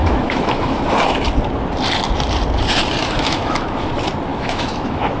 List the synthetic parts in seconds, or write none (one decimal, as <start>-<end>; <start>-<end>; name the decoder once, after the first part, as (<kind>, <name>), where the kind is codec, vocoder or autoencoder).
0.0-0.8 (autoencoder, DAC-VAE); 3.0-3.9; 4.3-5.2